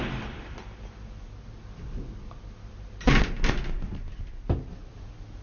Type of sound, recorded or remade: remade